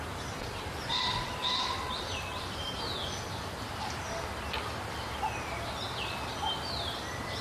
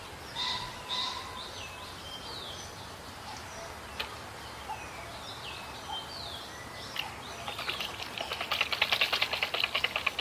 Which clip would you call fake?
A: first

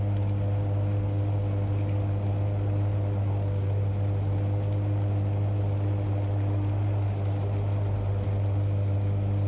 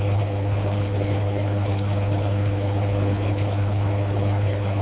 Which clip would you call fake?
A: second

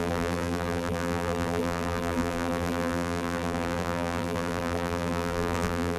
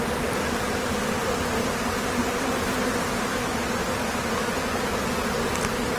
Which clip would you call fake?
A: first